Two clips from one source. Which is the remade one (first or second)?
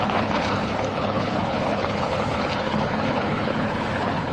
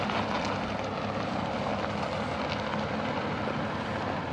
first